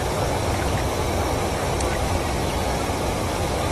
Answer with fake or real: real